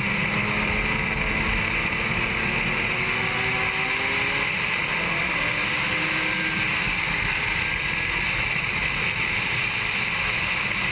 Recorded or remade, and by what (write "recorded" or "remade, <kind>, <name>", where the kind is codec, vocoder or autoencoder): recorded